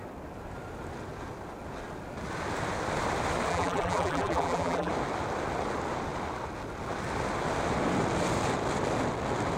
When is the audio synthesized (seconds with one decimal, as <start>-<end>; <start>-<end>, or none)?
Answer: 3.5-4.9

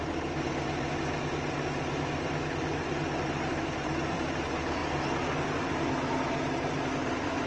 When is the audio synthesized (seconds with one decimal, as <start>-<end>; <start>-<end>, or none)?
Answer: 0.0-4.8; 6.6-7.5

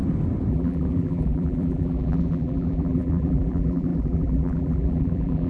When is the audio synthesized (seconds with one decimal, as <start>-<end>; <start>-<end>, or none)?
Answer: 0.5-5.5

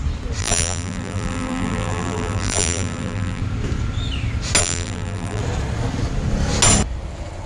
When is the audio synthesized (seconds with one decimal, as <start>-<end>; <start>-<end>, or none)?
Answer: 0.4-3.4; 4.6-5.4

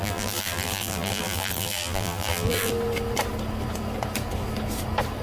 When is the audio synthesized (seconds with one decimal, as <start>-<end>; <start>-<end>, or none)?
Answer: 0.0-2.7

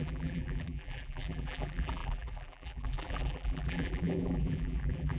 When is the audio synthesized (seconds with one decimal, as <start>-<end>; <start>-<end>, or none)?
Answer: 0.0-5.2

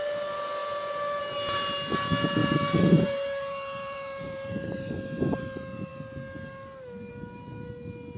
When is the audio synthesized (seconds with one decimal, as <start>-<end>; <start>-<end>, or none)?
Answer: 2.4-5.4

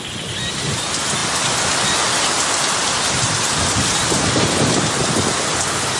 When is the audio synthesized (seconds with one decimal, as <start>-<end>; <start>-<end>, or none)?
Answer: none